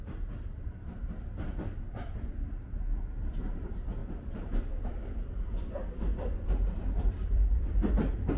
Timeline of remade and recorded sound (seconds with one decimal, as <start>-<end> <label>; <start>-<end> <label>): 0.0-4.0 recorded; 4.0-7.9 remade; 7.9-8.4 recorded